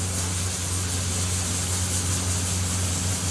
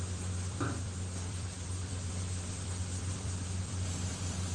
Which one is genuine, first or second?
first